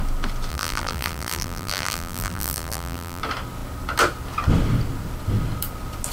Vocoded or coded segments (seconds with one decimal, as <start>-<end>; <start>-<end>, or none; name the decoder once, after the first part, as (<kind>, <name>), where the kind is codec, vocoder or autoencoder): 0.5-3.2 (vocoder, BigVGAN v2)